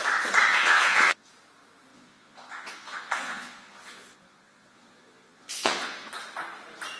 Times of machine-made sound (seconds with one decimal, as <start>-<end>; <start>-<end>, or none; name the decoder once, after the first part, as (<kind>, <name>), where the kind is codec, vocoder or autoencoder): 0.5-1.3 (vocoder, Vocos); 1.9-6.1